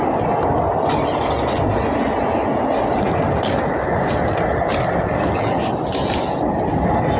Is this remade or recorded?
recorded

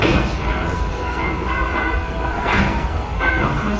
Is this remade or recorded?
remade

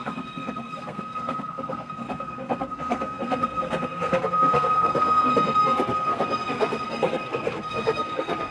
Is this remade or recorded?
remade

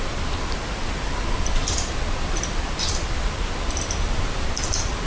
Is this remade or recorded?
recorded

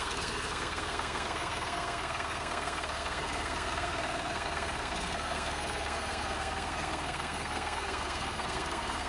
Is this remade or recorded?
remade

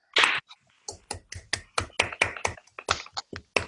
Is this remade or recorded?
recorded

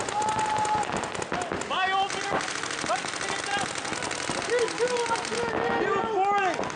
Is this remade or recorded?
recorded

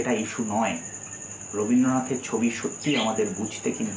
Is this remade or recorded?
recorded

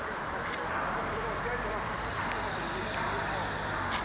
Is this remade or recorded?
recorded